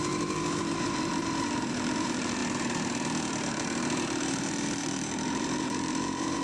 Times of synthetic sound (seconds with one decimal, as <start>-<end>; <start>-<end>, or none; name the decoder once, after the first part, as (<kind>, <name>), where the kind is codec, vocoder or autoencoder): 0.0-2.4 (vocoder, BigVGAN v2); 4.2-6.4